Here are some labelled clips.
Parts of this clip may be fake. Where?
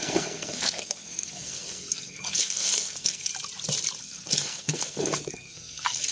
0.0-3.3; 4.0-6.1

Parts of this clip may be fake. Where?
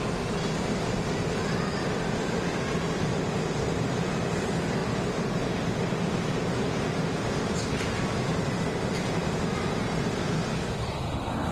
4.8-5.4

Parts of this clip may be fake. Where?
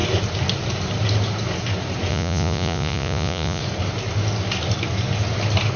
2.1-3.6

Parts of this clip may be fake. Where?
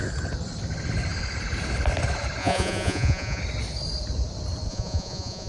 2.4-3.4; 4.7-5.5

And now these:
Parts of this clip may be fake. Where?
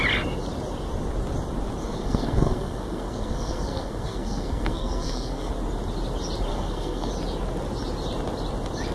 1.8-5.5; 6.5-7.1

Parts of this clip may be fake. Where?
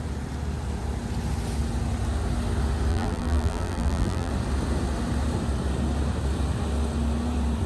2.9-4.3